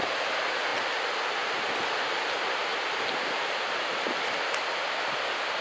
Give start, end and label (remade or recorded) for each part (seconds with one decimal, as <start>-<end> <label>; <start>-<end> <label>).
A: 0.0-5.6 recorded